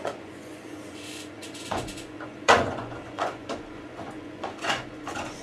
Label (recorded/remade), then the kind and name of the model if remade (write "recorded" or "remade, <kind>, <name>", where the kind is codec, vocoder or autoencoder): remade, vocoder, Vocos